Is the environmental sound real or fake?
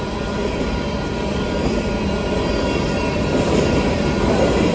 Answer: real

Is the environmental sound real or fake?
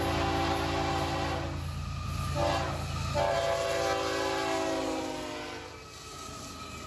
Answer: real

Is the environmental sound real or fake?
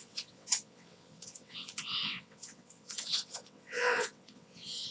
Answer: fake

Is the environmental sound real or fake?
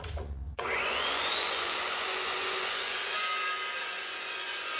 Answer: fake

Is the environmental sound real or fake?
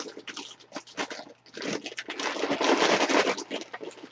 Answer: real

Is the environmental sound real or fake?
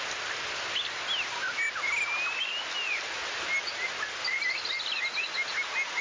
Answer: real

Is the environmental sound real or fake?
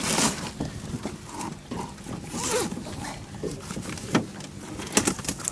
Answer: real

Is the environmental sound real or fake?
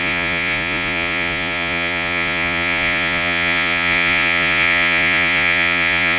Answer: fake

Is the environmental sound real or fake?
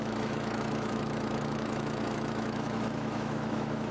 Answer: fake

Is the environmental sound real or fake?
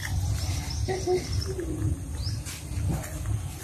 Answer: real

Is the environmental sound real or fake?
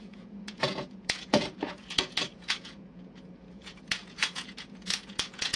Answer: fake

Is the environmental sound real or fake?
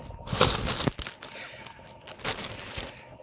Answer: real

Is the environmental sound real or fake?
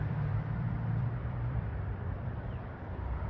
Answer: fake